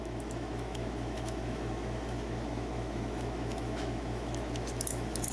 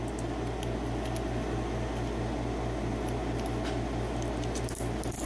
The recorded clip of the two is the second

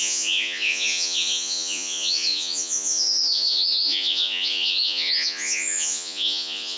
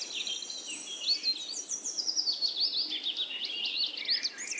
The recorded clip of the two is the second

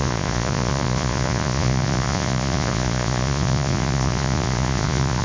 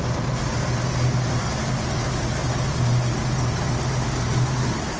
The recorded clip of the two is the second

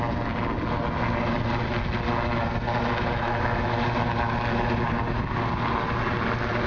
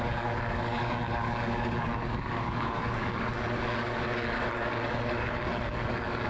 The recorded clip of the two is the first